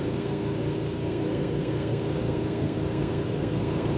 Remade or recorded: remade